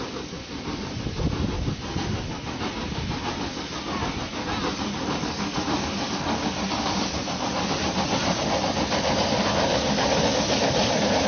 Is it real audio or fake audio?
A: real